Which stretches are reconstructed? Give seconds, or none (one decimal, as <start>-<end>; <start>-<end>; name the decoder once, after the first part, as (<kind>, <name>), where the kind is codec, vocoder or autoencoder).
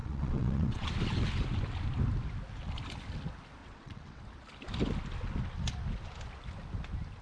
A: 0.0-0.9 (vocoder, WaveNeXt); 3.6-4.2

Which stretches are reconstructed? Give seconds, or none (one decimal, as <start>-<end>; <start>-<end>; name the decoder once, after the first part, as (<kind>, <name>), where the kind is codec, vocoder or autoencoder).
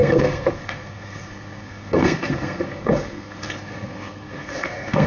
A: 0.0-5.1 (codec, SNAC)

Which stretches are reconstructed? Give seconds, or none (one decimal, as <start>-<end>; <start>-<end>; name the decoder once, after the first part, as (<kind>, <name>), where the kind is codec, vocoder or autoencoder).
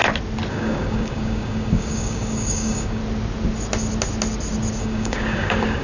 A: 0.5-3.0 (codec, DAC); 4.8-5.8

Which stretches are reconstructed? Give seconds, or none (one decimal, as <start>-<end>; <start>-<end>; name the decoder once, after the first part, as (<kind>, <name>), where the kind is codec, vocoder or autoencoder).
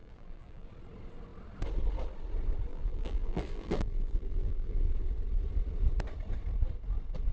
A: 0.0-0.7 (vocoder, BigVGAN v2); 2.7-4.9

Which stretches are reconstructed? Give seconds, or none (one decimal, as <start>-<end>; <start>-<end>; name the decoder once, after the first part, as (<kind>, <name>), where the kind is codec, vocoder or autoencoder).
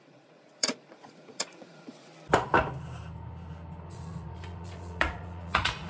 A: 0.0-2.1 (vocoder, Vocos); 3.9-5.9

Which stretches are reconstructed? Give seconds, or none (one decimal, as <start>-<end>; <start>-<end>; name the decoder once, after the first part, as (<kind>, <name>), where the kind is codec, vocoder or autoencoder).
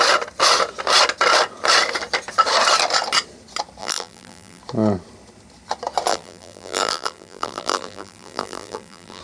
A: 3.8-4.6 (vocoder, BigVGAN v2); 6.1-9.2